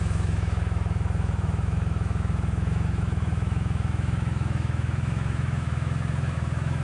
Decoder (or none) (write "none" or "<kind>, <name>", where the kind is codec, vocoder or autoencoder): autoencoder, DAC-VAE